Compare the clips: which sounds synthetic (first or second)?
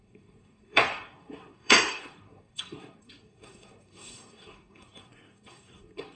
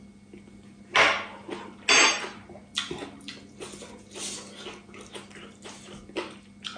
first